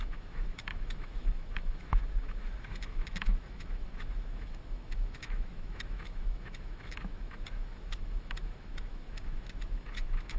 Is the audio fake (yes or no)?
yes